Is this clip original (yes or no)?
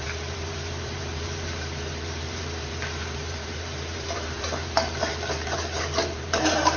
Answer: no